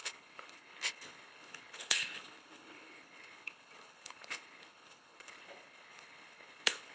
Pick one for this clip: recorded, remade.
remade